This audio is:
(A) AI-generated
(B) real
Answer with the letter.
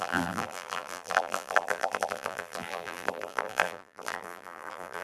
A